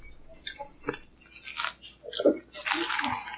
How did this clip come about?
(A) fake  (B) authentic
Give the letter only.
B